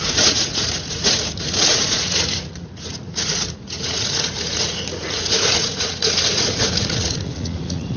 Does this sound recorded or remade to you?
remade